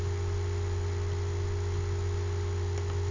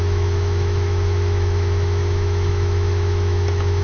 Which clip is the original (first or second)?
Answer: first